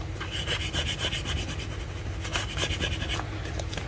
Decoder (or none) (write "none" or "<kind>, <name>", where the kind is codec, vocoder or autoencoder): none